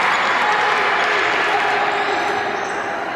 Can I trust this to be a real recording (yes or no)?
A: yes